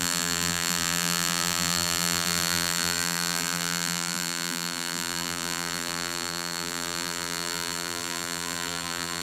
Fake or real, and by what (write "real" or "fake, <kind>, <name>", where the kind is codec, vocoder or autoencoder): fake, vocoder, BigVGAN v2